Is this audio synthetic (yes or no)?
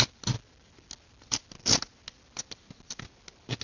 no